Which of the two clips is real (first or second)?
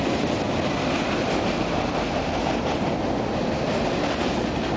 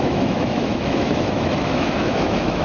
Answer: first